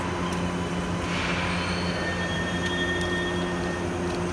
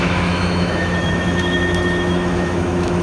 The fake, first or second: second